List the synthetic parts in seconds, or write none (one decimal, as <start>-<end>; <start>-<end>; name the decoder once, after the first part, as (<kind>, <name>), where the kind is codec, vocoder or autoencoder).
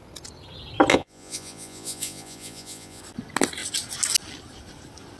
0.9-3.0 (vocoder, Vocos)